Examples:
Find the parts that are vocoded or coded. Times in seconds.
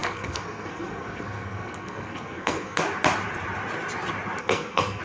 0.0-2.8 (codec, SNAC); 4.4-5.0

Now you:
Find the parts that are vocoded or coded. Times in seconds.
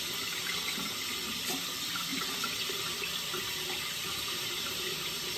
2.1-2.8 (vocoder, BigVGAN v2); 4.0-5.4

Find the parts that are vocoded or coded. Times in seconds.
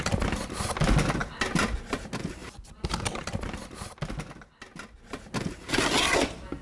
none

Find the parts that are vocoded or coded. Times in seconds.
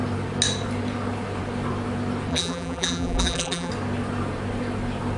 2.3-3.7 (vocoder, BigVGAN v2)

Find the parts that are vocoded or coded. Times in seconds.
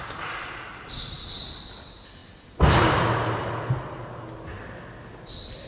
none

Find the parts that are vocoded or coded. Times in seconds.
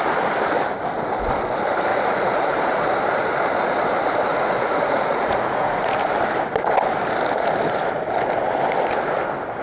1.9-2.9 (vocoder, Vocos); 4.3-5.9